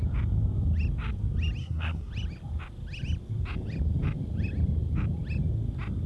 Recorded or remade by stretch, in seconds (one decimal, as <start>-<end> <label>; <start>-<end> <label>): 0.0-1.6 recorded; 1.6-2.1 remade; 2.1-6.1 recorded